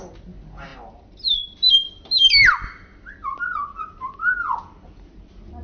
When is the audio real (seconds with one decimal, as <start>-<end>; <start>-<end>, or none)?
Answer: 0.0-5.6